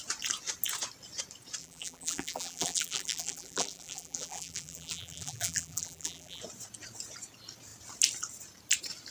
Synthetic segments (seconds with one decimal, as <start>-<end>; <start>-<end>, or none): 1.6-6.4